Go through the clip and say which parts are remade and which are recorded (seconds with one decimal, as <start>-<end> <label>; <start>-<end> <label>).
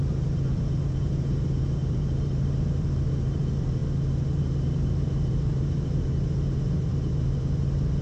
0.0-3.8 remade; 3.8-4.4 recorded; 4.4-8.0 remade